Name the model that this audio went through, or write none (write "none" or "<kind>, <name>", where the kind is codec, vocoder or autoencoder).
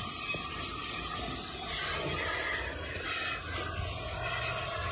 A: none